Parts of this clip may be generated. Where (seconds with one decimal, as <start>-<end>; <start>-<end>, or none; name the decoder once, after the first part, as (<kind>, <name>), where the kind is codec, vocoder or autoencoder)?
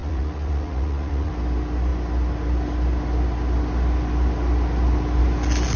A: 0.0-1.3 (vocoder, Vocos)